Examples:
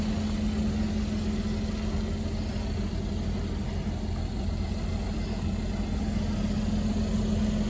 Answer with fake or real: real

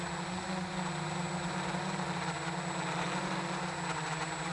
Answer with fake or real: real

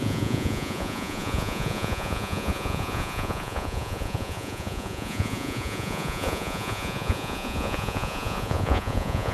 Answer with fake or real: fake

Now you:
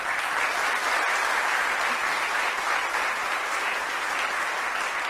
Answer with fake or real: real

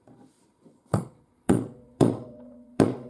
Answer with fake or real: fake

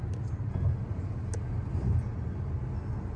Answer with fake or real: real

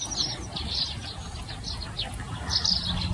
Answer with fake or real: real